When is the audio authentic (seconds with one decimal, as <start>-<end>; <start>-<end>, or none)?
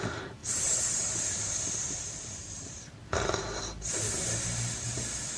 0.0-0.4; 3.6-5.4